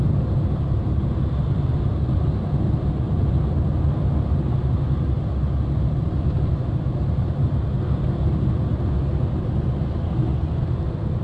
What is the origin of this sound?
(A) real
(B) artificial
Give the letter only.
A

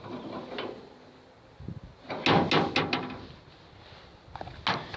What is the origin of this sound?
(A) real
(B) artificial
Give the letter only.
A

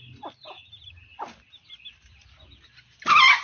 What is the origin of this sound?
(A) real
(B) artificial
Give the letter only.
A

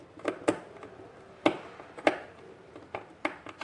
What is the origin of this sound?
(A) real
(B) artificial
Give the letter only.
A